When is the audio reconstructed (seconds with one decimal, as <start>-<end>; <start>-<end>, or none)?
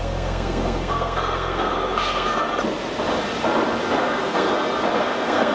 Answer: 0.0-2.5; 4.0-4.5; 5.0-5.5